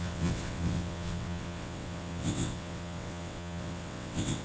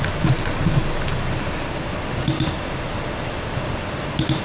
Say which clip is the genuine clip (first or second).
second